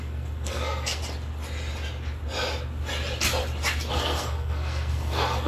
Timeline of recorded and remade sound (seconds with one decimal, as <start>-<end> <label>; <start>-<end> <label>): 0.0-1.0 remade; 1.0-3.9 recorded; 3.9-5.5 remade